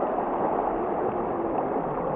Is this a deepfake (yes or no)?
no